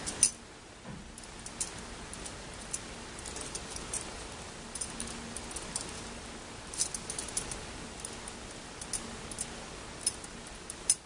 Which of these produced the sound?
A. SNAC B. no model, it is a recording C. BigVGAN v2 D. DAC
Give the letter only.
B